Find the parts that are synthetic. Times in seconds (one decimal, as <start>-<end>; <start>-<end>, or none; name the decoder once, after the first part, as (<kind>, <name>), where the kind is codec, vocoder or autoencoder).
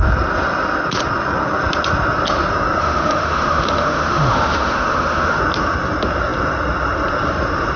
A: 2.8-5.4 (autoencoder, DAC-VAE)